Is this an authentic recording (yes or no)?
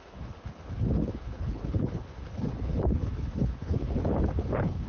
no